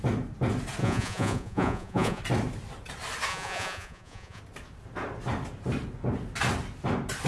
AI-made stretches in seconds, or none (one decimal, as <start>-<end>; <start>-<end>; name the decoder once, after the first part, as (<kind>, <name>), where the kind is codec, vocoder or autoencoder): 0.8-2.2 (vocoder, Vocos); 3.3-4.4